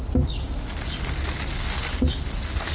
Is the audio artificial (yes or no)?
no